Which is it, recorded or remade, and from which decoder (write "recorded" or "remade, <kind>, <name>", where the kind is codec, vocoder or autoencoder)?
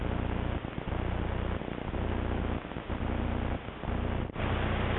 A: recorded